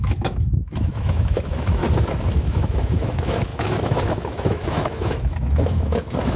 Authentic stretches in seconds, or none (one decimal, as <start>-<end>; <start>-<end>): 1.8-2.3